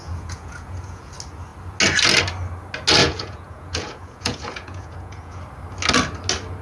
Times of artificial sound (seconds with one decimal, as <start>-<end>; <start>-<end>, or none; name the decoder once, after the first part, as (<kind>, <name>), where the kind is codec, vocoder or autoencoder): 0.0-1.1 (vocoder, Vocos); 3.0-5.4